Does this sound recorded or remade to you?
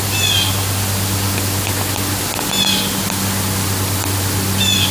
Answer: recorded